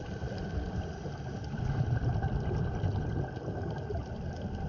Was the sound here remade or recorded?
recorded